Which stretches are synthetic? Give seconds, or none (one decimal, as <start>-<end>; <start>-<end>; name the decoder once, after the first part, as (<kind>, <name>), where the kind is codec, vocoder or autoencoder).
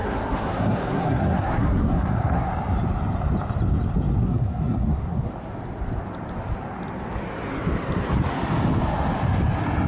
0.0-2.5 (codec, SNAC); 4.2-5.3